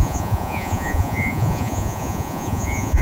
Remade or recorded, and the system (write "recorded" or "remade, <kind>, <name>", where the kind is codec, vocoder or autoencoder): remade, vocoder, Vocos